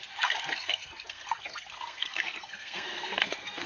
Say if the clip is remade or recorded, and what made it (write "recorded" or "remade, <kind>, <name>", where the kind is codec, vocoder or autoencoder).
remade, codec, SNAC